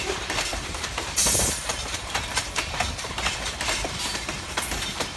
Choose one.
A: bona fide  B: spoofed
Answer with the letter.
B